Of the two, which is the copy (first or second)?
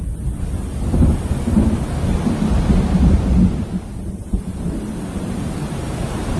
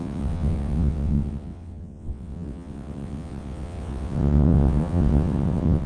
second